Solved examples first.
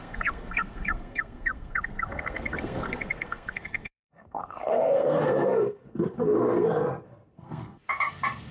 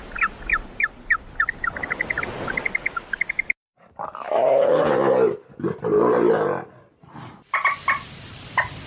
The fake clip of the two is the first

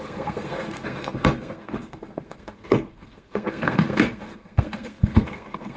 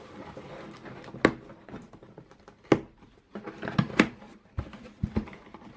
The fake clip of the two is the first